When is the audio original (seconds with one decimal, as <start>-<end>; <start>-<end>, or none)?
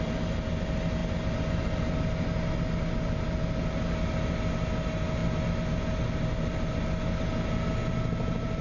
0.0-8.6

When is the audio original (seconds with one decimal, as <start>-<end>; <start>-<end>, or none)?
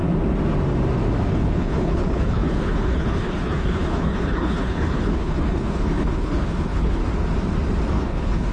0.0-1.3; 7.0-7.9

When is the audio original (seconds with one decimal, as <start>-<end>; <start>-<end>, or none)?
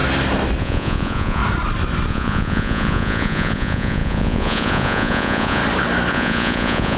0.0-0.6; 1.4-2.1; 5.6-6.1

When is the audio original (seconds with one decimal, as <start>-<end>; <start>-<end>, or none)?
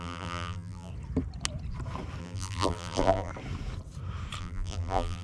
0.9-2.2; 3.3-4.4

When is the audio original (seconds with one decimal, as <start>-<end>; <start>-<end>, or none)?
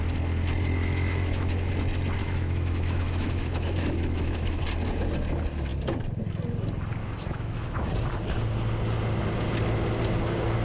0.0-0.8; 1.7-2.2; 4.6-7.0; 7.9-10.6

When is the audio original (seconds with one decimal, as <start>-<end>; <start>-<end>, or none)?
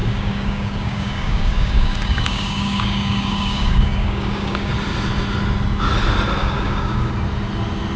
4.7-6.4; 7.1-8.0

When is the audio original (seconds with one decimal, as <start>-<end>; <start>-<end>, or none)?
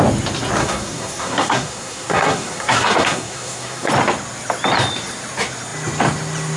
0.0-0.6; 3.9-6.6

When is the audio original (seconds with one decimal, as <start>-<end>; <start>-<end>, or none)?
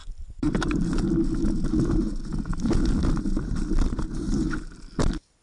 0.9-5.4